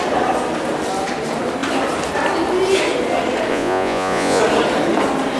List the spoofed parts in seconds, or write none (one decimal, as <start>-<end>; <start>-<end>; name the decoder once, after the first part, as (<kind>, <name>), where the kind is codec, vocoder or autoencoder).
3.5-4.4 (vocoder, Vocos)